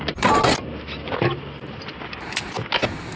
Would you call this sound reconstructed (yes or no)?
no